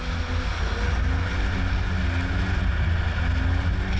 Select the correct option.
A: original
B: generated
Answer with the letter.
A